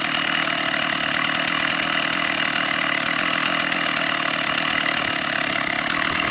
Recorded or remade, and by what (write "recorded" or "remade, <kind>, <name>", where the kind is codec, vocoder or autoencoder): recorded